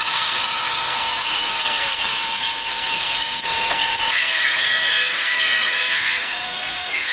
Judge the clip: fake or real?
fake